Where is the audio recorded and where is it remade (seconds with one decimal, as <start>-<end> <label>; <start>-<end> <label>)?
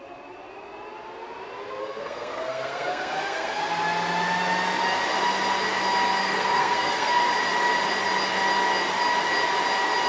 0.0-1.8 recorded; 1.8-3.6 remade; 3.6-6.2 recorded; 6.2-7.2 remade; 7.2-10.1 recorded